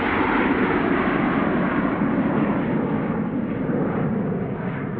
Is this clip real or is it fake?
real